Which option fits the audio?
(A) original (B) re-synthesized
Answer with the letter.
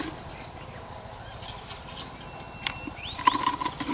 A